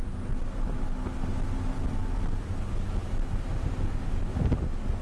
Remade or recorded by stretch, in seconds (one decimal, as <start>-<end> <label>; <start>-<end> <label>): 0.0-5.0 recorded